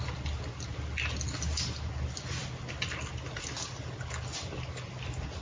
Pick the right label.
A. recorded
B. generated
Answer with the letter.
A